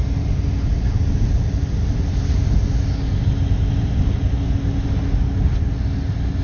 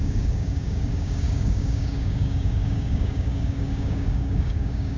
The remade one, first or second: second